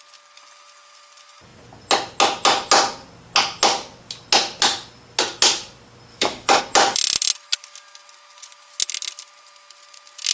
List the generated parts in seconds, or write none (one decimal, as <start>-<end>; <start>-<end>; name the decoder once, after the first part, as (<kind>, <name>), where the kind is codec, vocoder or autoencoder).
6.1-6.6 (autoencoder, DAC-VAE)